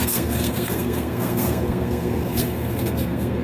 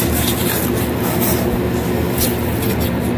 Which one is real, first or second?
second